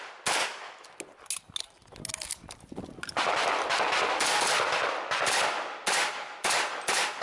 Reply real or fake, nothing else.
real